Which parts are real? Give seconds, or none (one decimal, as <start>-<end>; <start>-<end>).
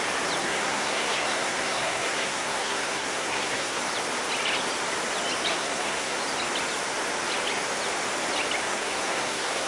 0.0-0.4; 3.8-5.5; 6.2-8.6